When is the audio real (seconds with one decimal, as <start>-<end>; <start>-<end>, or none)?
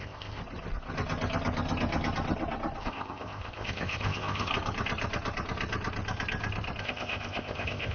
0.4-2.8; 4.5-6.8